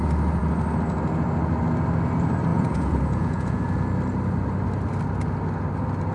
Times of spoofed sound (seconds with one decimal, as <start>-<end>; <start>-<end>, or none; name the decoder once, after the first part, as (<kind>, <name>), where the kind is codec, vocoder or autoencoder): 2.5-3.6 (vocoder, Vocos)